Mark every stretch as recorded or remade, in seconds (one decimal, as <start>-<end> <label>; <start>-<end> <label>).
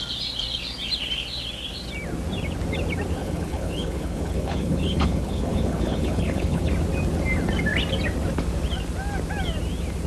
0.0-3.2 recorded; 3.2-6.7 remade; 6.7-10.1 recorded